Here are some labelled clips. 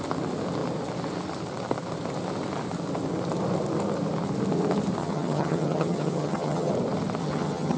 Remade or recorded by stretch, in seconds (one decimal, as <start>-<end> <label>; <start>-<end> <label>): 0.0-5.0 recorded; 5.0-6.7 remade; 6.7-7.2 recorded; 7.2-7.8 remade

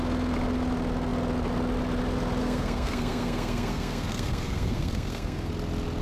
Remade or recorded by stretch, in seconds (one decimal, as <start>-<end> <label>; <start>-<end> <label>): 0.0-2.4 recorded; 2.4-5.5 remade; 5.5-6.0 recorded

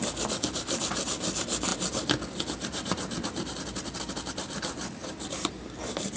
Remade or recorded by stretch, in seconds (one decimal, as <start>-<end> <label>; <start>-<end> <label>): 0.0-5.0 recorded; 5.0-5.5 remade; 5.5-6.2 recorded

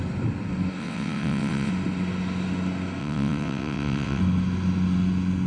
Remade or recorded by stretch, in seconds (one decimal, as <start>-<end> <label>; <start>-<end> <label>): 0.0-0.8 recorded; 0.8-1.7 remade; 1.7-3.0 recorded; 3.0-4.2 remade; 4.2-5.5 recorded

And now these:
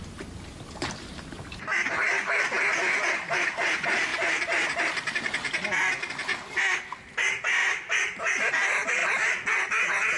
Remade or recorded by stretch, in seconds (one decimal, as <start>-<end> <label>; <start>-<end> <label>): 0.0-10.2 recorded

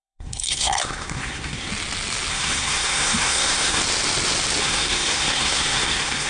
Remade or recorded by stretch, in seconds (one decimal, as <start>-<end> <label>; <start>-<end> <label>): 0.0-1.7 remade; 1.7-2.3 recorded; 2.3-3.8 remade; 3.8-4.6 recorded; 4.6-6.3 remade

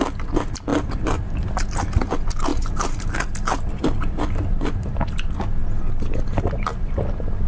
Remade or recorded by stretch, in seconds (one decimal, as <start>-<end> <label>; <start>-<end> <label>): 0.0-0.7 recorded; 0.7-1.5 remade; 1.5-2.5 recorded; 2.5-4.9 remade; 4.9-7.5 recorded

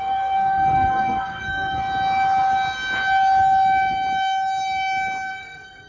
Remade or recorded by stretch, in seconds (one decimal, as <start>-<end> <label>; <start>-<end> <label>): 0.0-1.8 remade; 1.8-5.3 recorded; 5.3-5.9 remade